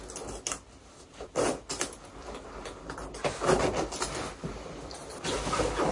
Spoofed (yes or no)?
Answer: no